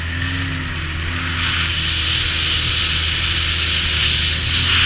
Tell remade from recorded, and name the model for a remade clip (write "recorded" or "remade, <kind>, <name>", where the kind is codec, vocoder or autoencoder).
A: recorded